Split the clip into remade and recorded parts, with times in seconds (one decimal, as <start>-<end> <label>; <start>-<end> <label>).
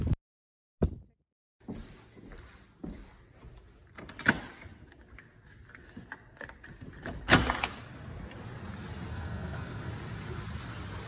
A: 0.0-9.1 recorded; 9.1-9.9 remade; 9.9-11.1 recorded